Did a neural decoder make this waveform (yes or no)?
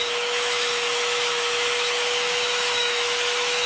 yes